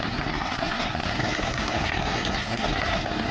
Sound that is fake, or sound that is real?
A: fake